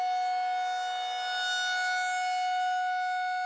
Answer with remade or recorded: recorded